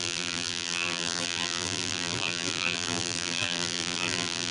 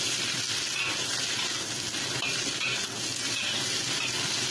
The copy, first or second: first